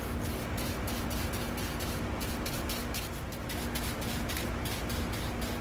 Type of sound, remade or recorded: recorded